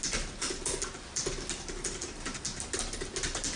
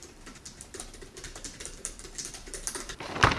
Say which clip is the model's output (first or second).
second